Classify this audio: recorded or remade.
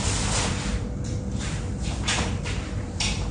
remade